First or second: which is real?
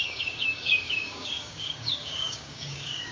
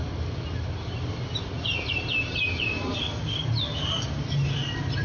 second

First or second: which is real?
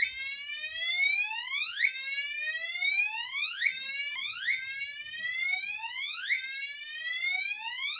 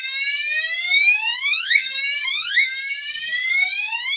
first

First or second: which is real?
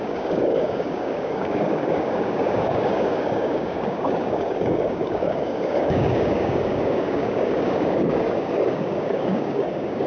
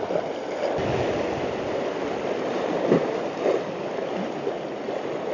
second